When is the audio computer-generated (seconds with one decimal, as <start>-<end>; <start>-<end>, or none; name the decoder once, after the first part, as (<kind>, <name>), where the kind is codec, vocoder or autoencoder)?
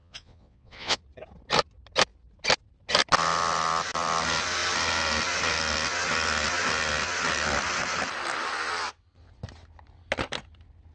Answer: 0.0-1.0 (vocoder, Vocos)